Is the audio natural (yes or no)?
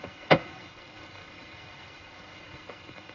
no